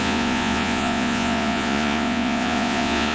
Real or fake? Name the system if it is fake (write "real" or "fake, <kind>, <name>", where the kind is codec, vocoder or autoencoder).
fake, vocoder, Vocos